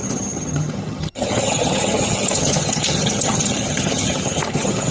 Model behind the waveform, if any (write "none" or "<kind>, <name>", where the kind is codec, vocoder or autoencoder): vocoder, HiFi-GAN